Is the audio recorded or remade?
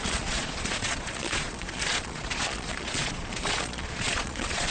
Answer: remade